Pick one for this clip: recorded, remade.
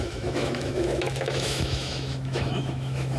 remade